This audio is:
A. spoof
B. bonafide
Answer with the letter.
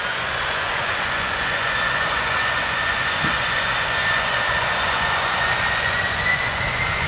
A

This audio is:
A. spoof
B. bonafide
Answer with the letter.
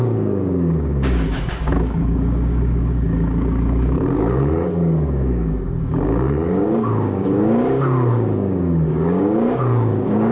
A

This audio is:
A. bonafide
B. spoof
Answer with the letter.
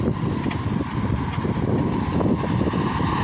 A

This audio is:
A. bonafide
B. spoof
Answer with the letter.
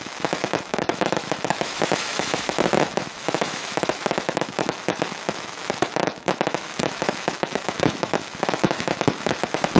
B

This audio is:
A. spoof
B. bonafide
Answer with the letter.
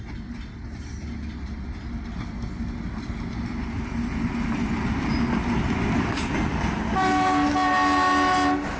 B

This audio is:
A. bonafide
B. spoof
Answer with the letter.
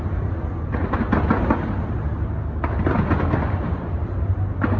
A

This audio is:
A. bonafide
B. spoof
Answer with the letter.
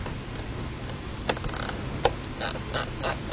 A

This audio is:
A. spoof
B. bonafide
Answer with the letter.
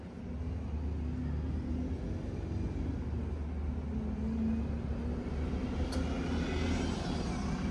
B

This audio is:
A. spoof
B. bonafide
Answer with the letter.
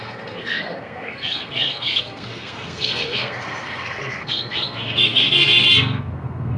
A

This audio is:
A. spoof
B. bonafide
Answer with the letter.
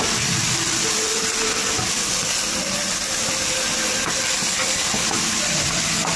B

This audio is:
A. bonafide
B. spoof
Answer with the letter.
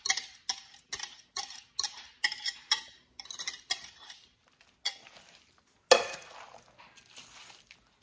A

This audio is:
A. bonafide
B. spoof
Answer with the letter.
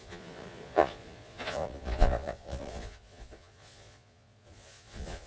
B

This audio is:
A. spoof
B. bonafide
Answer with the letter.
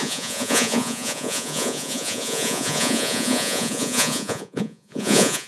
A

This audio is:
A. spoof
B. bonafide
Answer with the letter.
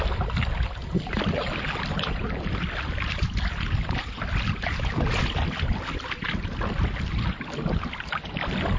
B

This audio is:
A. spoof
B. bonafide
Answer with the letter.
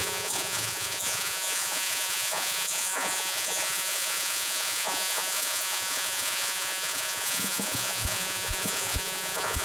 A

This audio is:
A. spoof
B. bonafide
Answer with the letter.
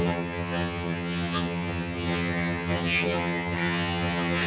A